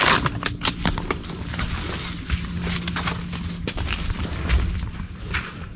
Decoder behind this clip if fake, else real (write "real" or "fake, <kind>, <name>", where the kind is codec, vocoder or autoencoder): real